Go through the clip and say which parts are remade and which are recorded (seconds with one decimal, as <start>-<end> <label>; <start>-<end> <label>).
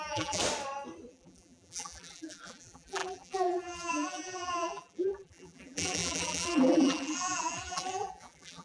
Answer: 0.0-0.4 remade; 0.4-1.1 recorded; 1.1-8.6 remade